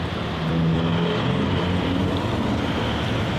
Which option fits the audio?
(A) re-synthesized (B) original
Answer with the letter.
A